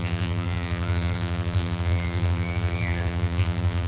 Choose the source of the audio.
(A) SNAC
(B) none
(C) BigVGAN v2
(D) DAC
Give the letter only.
C